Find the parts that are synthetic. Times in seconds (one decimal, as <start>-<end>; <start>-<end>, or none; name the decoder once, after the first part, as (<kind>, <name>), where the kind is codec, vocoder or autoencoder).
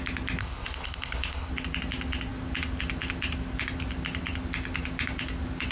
0.4-1.5 (codec, HILCodec)